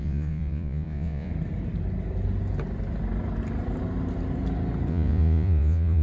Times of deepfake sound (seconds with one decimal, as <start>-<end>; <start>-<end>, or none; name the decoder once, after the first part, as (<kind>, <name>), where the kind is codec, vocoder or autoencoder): 0.0-1.3 (vocoder, Vocos); 4.9-6.0